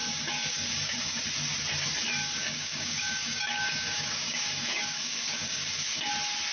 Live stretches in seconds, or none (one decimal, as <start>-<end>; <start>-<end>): 1.2-2.2; 6.1-6.5